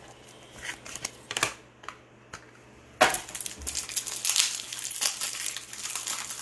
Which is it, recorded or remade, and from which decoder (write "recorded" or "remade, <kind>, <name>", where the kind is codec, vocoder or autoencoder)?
recorded